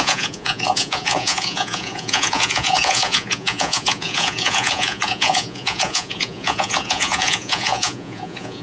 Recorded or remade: remade